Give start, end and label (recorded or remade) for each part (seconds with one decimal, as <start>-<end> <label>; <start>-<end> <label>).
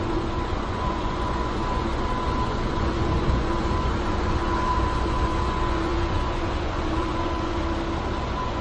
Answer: 0.0-7.6 remade; 7.6-8.2 recorded; 8.2-8.6 remade